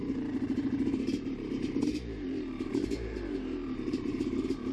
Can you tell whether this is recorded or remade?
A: remade